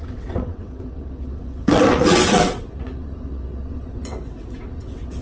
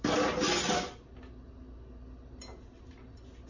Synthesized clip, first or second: first